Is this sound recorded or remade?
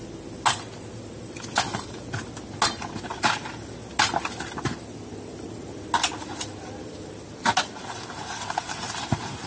recorded